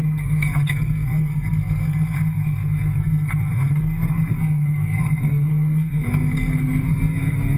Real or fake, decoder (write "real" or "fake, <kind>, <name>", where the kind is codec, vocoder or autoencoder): fake, codec, SNAC